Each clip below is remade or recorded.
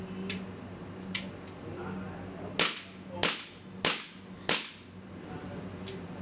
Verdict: recorded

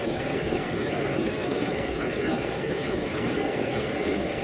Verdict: remade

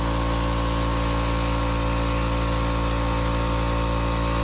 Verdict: recorded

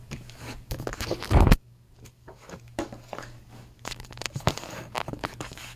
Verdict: remade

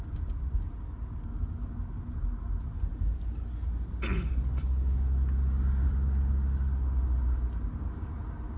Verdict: recorded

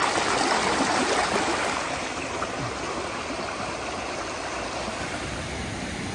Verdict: recorded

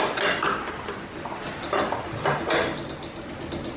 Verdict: recorded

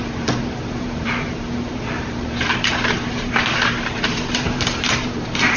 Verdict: remade